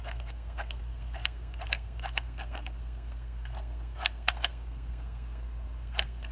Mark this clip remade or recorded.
remade